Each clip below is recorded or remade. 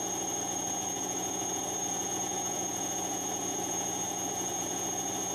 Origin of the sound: remade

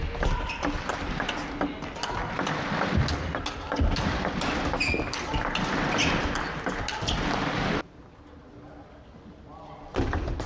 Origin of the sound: recorded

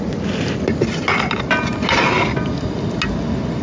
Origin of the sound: recorded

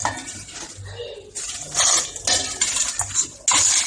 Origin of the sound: recorded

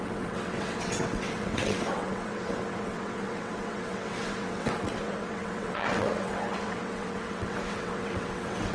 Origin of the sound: remade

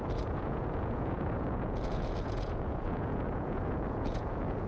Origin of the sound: remade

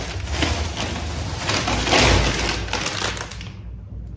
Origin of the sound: recorded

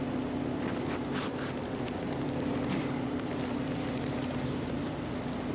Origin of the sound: remade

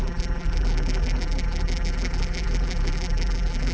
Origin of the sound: remade